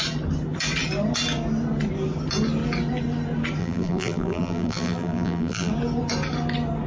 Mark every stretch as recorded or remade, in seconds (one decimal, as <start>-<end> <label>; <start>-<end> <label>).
0.0-3.6 recorded; 3.6-5.7 remade; 5.7-6.9 recorded